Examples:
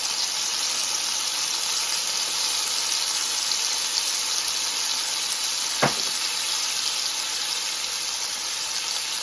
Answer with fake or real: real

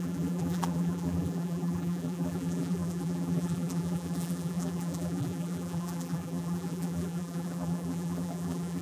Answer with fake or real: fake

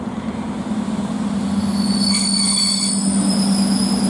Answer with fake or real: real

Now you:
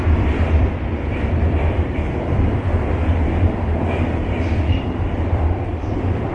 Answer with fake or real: fake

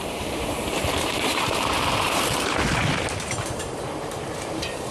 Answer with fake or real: fake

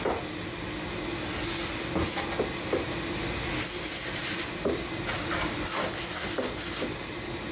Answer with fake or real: real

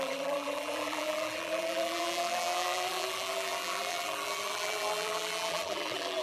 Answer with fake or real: fake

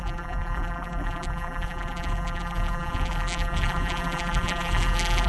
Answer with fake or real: fake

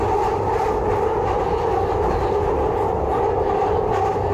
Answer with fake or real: real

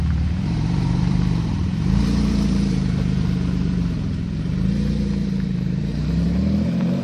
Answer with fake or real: fake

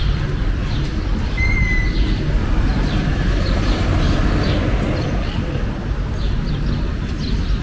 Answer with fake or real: real